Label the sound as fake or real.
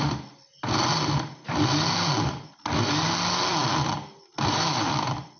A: real